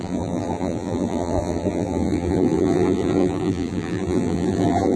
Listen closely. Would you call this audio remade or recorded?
remade